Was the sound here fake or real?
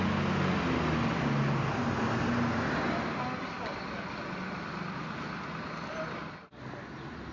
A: real